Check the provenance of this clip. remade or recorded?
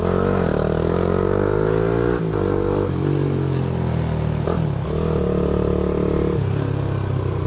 recorded